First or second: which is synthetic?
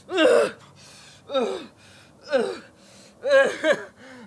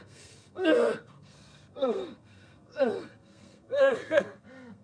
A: second